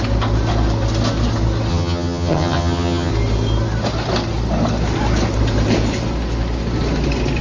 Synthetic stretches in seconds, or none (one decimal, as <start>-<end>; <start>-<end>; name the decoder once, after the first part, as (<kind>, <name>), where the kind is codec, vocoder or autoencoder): 1.7-3.1 (vocoder, HiFi-GAN)